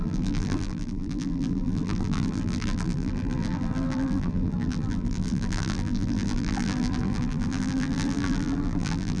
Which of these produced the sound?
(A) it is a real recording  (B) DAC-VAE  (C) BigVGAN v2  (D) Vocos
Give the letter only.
C